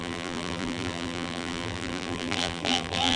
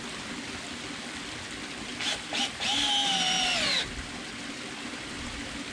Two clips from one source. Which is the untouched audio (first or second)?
second